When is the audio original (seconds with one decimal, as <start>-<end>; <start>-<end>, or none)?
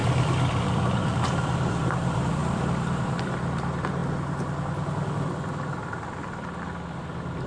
4.0-7.0